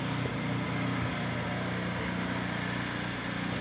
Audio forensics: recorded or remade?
recorded